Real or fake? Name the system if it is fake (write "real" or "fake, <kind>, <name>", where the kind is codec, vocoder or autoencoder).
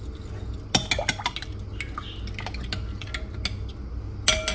real